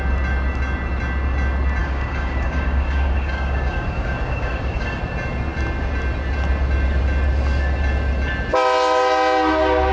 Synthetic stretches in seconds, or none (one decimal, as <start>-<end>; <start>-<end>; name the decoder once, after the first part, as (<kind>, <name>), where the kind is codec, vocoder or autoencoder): 1.8-5.0 (codec, DAC)